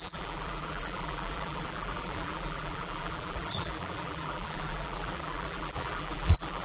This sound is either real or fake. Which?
fake